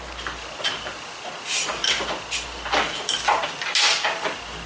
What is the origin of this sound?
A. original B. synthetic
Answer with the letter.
A